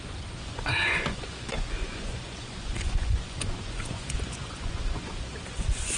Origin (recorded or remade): remade